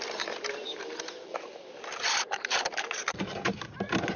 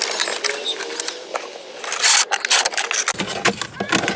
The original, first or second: second